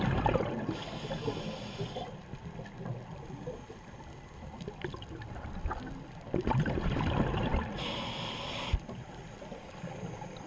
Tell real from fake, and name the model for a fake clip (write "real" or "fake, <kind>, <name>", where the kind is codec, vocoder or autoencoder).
real